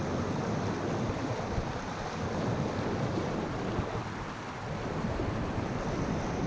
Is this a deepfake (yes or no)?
no